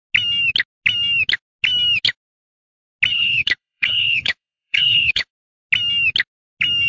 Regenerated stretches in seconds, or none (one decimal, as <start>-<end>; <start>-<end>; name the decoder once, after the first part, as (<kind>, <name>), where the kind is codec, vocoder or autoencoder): 3.1-5.3 (codec, HILCodec)